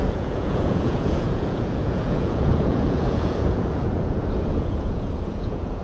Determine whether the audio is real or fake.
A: fake